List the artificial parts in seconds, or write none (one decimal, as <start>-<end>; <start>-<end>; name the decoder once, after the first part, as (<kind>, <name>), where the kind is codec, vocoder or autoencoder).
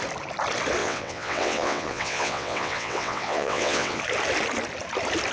0.8-4.0 (vocoder, WaveNeXt)